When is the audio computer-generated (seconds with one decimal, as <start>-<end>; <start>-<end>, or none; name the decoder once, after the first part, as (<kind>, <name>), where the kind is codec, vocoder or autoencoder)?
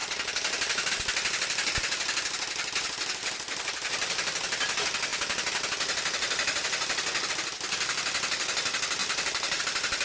none